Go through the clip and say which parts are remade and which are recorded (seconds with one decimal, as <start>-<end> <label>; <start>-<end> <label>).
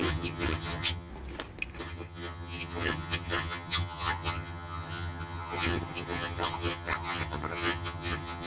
0.0-1.1 remade; 1.1-1.8 recorded; 1.8-8.5 remade